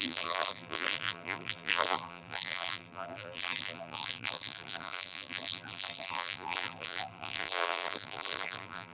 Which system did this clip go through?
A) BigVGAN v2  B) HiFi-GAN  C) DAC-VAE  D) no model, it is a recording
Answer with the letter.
A